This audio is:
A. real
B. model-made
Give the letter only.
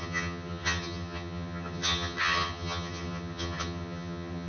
B